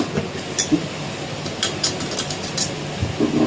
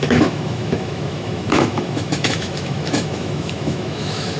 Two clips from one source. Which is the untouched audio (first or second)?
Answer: first